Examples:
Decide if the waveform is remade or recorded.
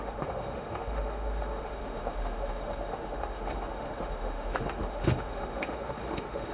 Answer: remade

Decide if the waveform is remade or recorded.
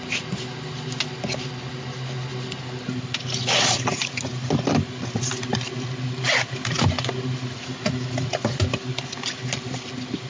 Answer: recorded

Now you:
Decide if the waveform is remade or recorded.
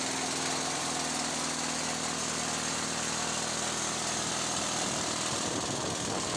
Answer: recorded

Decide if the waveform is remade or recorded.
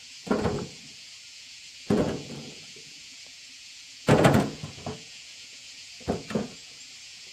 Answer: remade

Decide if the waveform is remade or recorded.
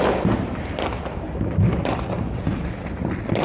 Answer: recorded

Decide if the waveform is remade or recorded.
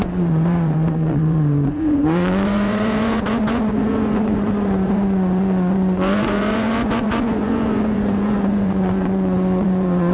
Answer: remade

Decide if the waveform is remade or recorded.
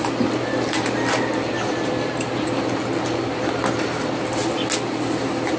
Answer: recorded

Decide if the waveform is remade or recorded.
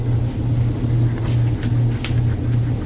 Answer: recorded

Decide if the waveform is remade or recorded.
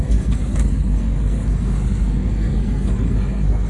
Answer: remade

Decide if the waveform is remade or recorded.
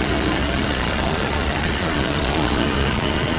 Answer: remade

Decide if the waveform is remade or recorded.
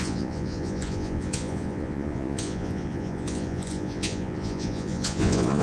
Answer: remade